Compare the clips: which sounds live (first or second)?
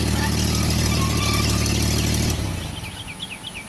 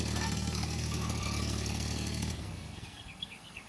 first